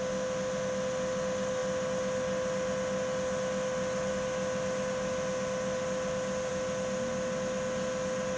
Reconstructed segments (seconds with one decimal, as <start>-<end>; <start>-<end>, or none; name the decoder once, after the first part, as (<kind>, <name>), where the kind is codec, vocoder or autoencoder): none